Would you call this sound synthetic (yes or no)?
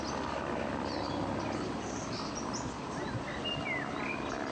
no